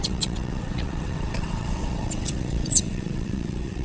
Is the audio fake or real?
fake